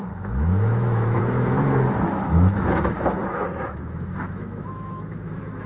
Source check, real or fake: fake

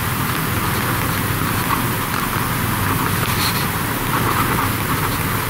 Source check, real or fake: real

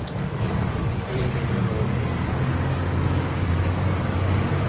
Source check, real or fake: fake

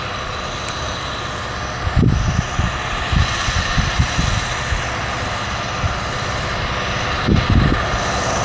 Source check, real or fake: real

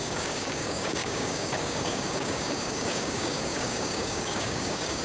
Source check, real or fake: fake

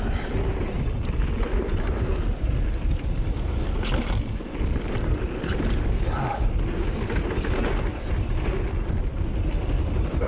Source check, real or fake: real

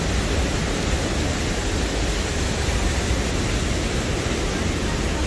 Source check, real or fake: real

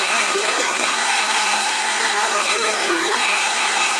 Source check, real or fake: fake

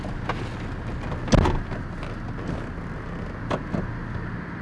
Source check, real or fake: real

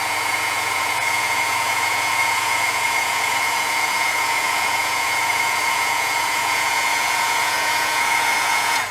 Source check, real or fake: fake